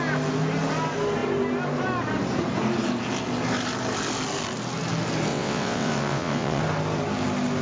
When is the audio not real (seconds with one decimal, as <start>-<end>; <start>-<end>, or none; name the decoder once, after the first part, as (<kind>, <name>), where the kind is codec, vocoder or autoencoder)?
5.3-6.6 (vocoder, WaveNeXt)